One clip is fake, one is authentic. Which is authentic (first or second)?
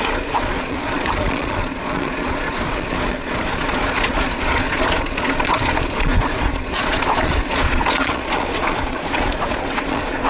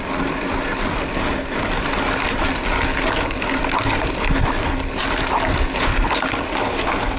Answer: second